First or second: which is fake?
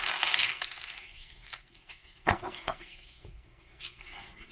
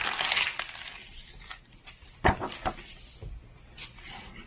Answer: first